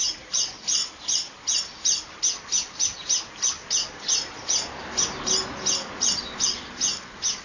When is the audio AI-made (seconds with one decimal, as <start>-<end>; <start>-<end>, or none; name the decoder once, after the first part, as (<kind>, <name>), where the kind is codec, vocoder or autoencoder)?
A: none